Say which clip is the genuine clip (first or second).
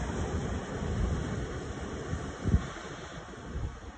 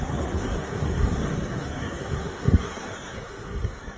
first